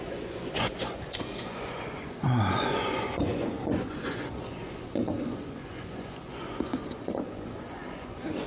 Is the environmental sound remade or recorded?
remade